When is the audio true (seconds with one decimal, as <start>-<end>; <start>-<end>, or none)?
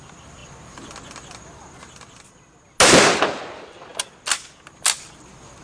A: 0.0-5.6